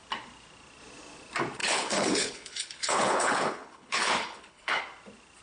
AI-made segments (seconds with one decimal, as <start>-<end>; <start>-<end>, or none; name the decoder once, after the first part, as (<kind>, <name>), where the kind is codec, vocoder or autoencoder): 1.6-4.8 (codec, HILCodec)